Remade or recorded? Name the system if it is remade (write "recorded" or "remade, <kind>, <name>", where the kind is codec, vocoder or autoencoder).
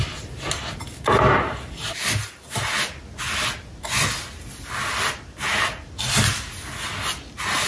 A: recorded